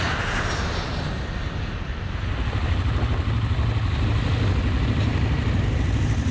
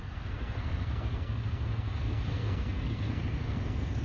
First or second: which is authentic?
first